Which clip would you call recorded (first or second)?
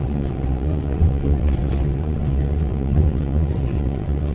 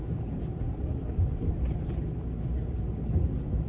second